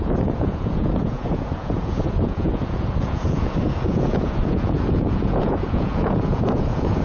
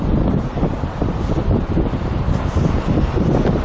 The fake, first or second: first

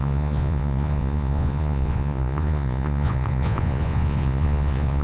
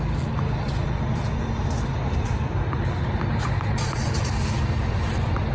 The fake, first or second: first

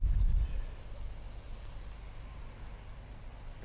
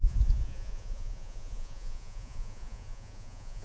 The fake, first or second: second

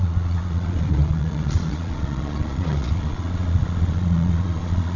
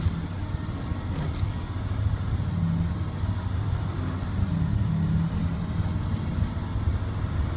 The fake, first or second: first